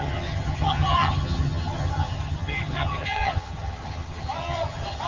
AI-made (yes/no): yes